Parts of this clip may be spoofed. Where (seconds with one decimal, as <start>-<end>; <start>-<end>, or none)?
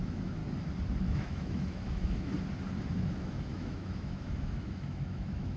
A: 0.0-0.4; 1.0-2.3; 2.9-5.6